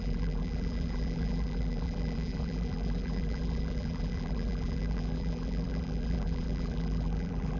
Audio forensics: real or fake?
fake